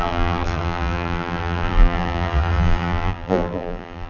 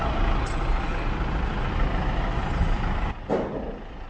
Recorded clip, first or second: second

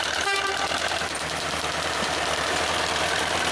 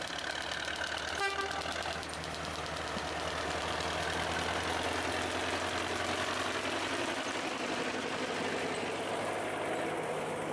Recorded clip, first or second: second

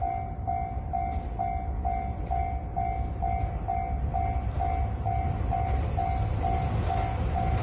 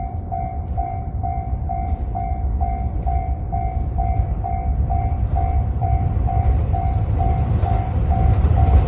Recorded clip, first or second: first